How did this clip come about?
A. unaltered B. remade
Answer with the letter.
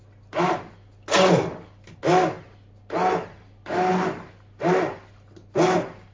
A